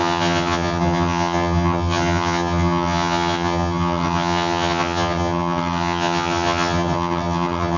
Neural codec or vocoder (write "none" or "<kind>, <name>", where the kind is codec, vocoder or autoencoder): vocoder, HiFi-GAN